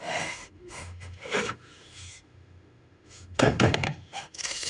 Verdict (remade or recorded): remade